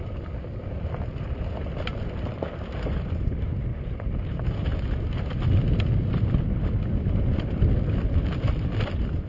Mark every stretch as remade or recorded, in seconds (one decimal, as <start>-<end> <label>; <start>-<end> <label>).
0.0-3.7 recorded; 3.7-4.4 remade; 4.4-9.3 recorded